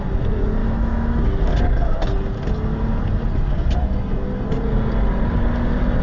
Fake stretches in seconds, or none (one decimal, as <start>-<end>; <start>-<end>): 0.6-1.2